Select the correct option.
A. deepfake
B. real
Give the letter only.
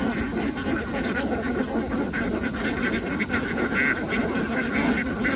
B